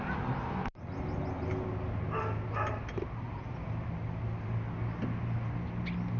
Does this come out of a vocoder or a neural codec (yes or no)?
no